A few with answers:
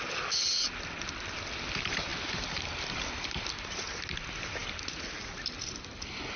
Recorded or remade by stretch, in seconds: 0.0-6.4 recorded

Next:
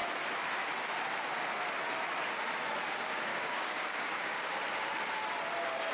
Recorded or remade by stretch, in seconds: 0.0-3.3 recorded; 3.3-4.5 remade; 4.5-5.9 recorded

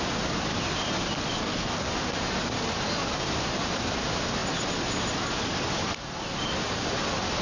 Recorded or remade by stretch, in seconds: 0.0-1.4 recorded; 1.4-1.9 remade; 1.9-7.4 recorded

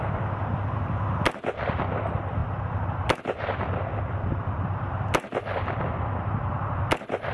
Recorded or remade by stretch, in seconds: 0.0-7.3 recorded

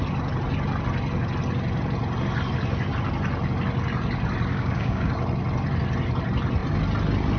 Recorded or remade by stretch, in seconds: 0.0-4.5 recorded; 4.5-5.1 remade; 5.1-7.4 recorded

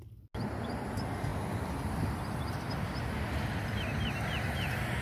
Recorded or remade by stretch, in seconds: 0.0-5.0 recorded

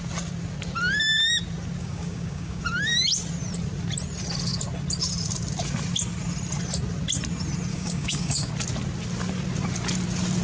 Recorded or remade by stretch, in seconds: 0.0-1.8 recorded; 1.8-2.6 remade; 2.6-7.7 recorded; 7.7-8.5 remade; 8.5-10.4 recorded

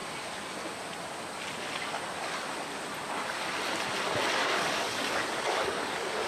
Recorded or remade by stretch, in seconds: 0.0-4.4 recorded; 4.4-6.3 remade